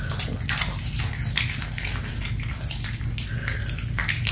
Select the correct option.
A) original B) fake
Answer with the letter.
A